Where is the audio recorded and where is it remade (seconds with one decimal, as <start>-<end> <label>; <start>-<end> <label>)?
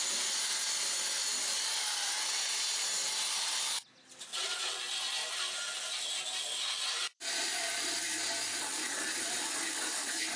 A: 0.0-10.4 recorded